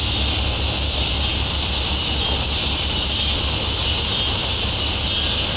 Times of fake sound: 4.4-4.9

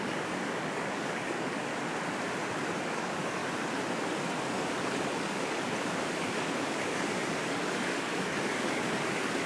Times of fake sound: 0.0-1.7; 2.8-3.4; 4.4-9.5

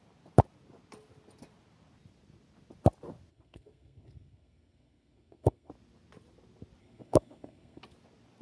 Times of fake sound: 3.3-5.7; 6.8-7.8